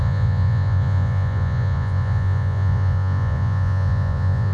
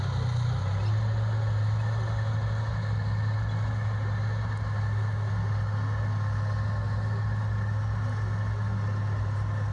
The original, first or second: second